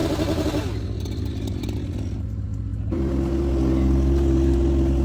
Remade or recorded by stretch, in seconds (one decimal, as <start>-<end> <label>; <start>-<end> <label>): 0.0-2.0 remade; 2.0-2.7 recorded; 2.7-3.4 remade; 3.4-5.0 recorded